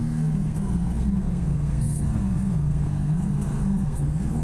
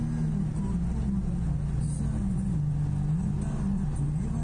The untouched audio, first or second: second